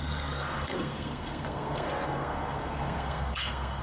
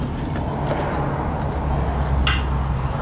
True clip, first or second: second